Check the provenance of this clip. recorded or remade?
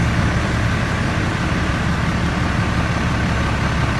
recorded